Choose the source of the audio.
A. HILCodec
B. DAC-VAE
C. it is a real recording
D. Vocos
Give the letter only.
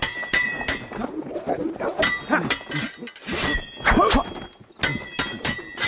C